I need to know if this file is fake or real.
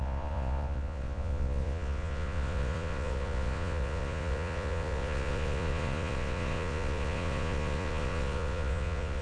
fake